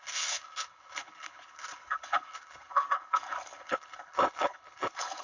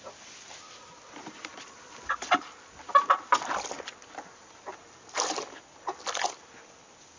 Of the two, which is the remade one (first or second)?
first